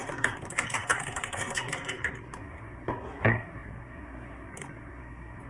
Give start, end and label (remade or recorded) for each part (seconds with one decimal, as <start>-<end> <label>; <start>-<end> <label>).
0.0-5.5 remade